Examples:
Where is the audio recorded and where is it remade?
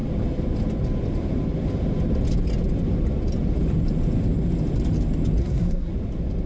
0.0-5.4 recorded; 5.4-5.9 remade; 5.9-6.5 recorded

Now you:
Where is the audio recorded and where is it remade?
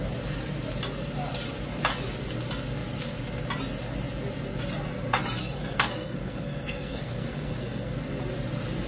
0.0-5.4 recorded; 5.4-8.0 remade; 8.0-8.9 recorded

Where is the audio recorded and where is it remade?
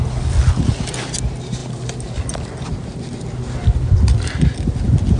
0.0-5.2 recorded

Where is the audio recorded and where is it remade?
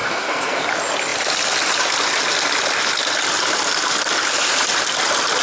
0.0-0.7 remade; 0.7-5.4 recorded